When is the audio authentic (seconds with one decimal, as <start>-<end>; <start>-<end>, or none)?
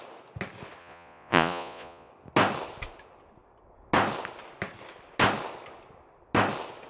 0.0-0.8; 2.1-6.9